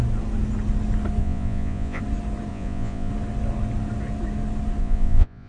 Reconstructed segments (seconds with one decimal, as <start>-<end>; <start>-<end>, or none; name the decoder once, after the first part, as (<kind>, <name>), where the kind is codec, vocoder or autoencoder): 1.2-2.0 (vocoder, Vocos); 2.5-3.1; 4.8-5.5